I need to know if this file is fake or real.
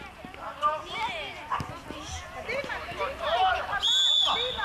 real